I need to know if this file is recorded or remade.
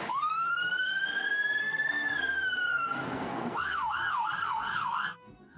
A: remade